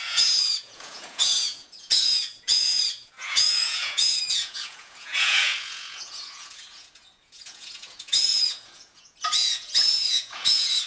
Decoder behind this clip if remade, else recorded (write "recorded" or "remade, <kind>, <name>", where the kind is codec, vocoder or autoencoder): remade, vocoder, Vocos